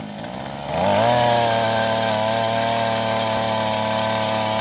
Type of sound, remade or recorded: recorded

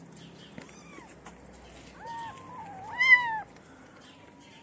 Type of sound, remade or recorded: recorded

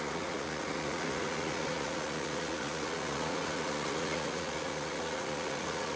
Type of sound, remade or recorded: remade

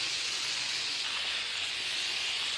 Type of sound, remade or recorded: remade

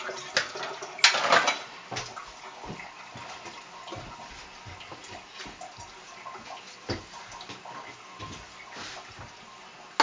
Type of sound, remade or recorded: recorded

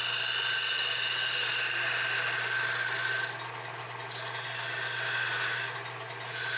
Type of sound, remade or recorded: recorded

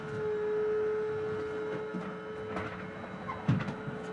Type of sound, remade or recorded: recorded